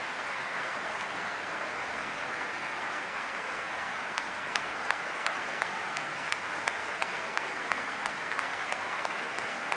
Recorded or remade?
remade